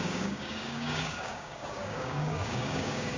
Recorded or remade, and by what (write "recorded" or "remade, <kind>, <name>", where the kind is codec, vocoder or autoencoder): remade, codec, DAC